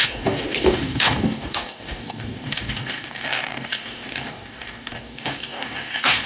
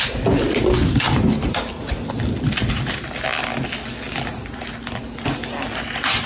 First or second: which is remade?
first